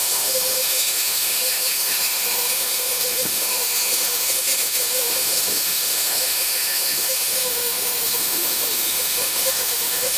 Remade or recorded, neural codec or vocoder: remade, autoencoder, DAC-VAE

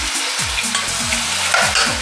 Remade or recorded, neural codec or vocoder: recorded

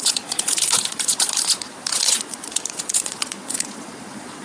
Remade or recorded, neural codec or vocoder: remade, vocoder, Vocos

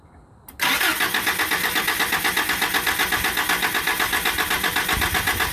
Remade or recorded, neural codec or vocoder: recorded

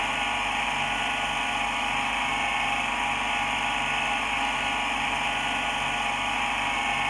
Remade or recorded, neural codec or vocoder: recorded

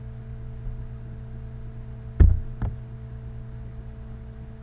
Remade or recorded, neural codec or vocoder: recorded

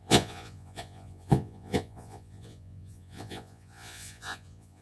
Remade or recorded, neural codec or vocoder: remade, vocoder, Vocos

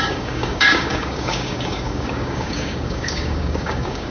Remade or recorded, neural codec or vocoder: remade, codec, DAC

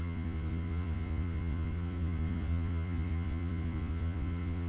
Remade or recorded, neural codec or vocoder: remade, vocoder, Vocos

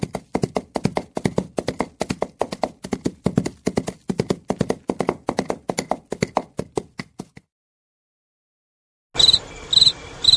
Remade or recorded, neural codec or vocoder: recorded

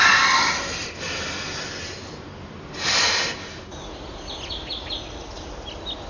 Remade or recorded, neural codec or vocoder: recorded